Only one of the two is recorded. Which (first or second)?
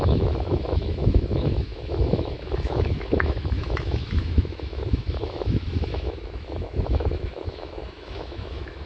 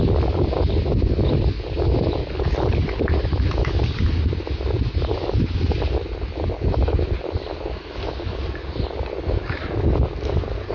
second